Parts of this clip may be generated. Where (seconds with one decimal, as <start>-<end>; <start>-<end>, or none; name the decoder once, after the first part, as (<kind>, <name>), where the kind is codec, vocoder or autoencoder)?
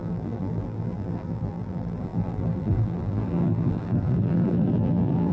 0.0-5.3 (vocoder, BigVGAN v2)